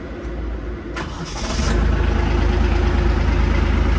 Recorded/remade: recorded